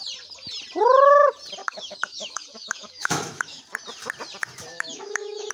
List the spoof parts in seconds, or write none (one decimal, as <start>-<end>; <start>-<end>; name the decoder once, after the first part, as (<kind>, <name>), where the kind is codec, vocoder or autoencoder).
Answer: 1.6-3.6 (autoencoder, DAC-VAE); 4.7-5.5